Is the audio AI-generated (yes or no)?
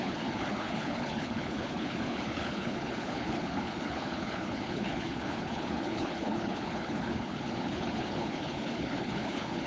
yes